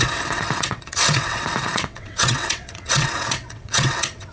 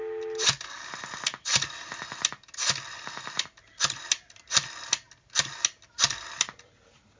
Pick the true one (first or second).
second